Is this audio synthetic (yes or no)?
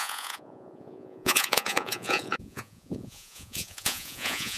yes